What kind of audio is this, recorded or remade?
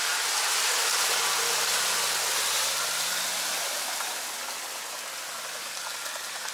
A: recorded